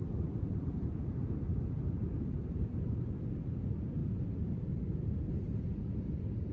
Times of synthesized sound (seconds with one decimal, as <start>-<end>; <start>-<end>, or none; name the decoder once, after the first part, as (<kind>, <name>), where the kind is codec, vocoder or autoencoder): 0.0-3.2 (vocoder, BigVGAN v2)

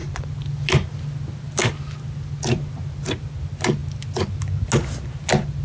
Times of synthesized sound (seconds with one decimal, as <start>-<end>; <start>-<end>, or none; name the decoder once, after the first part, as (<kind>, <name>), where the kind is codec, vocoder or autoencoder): none

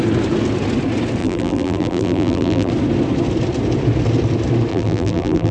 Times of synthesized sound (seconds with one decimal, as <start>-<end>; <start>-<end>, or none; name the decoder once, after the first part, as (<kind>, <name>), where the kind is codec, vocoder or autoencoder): 1.2-2.7 (vocoder, BigVGAN v2); 4.7-5.5

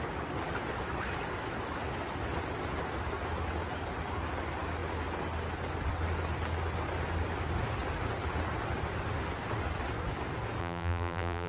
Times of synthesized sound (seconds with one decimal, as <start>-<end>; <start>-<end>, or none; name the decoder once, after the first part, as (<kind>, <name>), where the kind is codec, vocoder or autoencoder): 10.6-11.5 (vocoder, BigVGAN v2)